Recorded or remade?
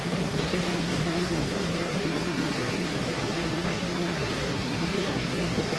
remade